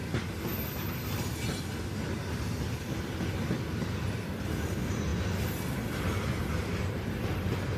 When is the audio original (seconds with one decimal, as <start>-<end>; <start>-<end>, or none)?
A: 0.0-7.8